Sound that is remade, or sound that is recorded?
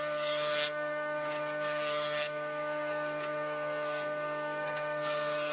remade